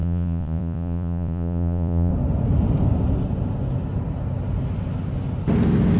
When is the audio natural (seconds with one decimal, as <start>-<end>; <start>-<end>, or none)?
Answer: 2.1-6.0